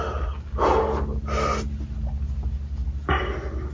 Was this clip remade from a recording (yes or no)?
no